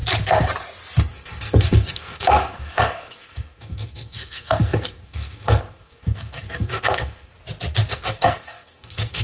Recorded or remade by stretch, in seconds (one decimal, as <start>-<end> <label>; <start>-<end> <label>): 0.0-1.0 recorded; 1.0-7.3 remade; 7.3-7.9 recorded; 7.9-9.2 remade